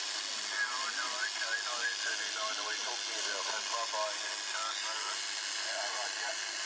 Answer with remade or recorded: recorded